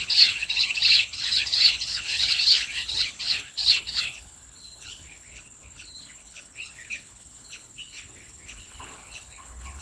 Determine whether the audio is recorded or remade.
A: remade